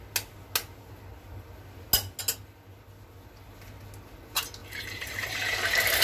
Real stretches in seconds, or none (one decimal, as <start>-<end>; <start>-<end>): 0.0-4.6